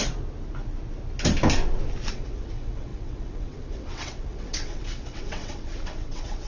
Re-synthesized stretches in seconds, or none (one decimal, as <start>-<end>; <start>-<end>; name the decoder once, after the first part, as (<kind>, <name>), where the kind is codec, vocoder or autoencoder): 2.1-6.5 (vocoder, WaveNeXt)